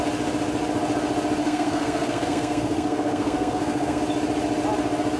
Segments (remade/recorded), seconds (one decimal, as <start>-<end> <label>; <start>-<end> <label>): 0.0-1.4 recorded; 1.4-4.0 remade; 4.0-5.2 recorded